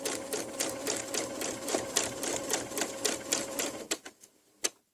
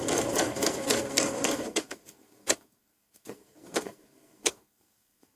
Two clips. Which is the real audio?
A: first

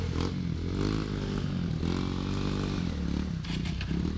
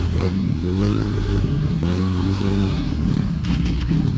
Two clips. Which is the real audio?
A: first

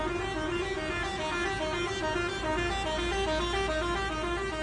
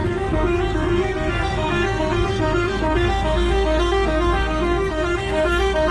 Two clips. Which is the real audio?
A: first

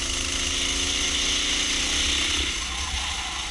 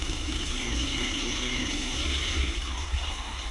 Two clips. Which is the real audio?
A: first